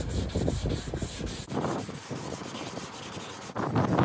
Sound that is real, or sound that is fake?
real